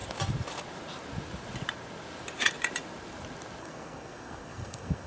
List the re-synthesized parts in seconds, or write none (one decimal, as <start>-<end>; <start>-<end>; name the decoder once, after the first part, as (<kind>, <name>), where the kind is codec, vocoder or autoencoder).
3.6-5.1 (codec, SNAC)